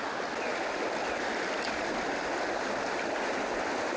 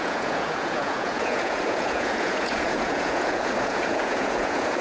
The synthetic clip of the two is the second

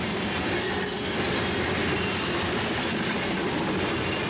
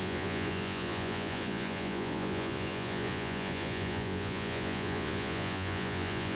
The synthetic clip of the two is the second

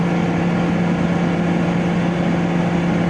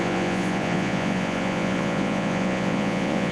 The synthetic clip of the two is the second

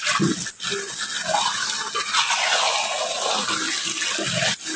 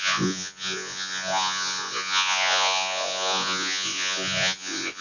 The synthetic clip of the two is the second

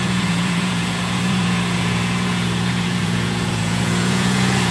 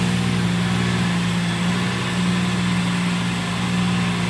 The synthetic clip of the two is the first